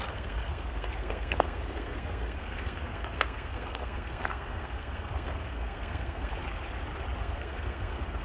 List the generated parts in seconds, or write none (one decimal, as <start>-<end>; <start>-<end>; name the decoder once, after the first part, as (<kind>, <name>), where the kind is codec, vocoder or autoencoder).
0.0-6.3 (codec, SNAC); 7.2-8.2